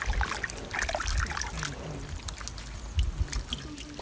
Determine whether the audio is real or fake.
real